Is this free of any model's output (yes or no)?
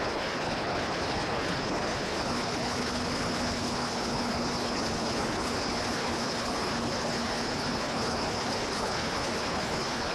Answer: no